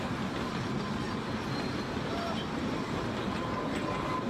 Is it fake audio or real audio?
real